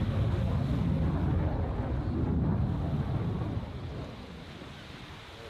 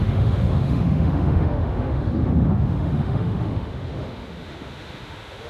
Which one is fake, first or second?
second